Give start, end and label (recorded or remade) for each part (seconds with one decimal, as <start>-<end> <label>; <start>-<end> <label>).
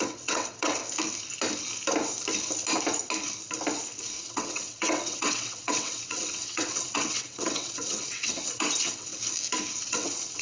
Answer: 0.0-0.8 remade; 0.8-4.2 recorded; 4.2-9.1 remade; 9.1-9.8 recorded; 9.8-10.4 remade